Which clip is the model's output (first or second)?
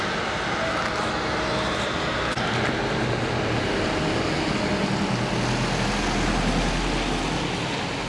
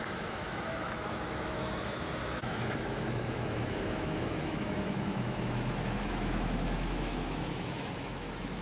second